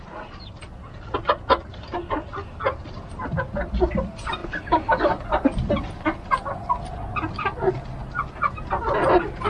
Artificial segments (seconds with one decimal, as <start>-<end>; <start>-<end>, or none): 4.4-6.9